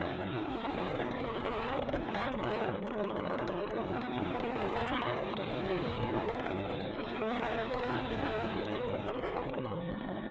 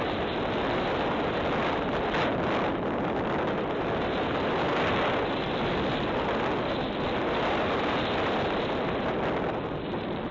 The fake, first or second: first